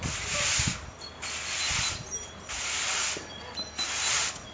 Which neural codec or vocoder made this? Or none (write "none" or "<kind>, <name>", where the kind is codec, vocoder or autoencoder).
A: none